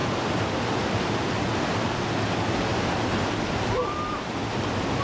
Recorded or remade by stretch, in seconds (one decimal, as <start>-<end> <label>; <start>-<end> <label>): 0.0-2.7 recorded; 2.7-3.8 remade; 3.8-5.0 recorded